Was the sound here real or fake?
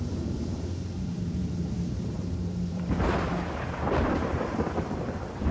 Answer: fake